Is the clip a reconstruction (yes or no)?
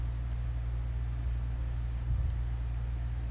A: no